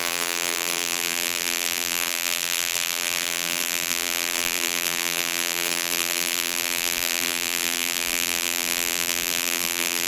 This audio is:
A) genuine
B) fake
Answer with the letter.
B